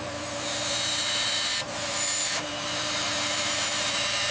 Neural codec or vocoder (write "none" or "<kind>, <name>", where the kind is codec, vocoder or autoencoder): vocoder, BigVGAN v2